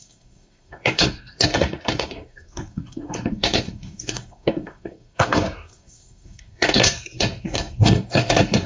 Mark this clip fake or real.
fake